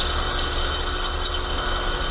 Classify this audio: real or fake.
real